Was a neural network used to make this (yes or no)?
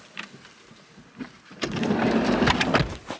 no